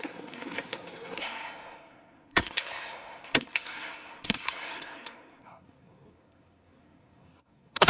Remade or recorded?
remade